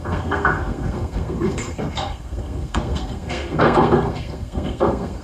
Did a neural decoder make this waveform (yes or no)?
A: yes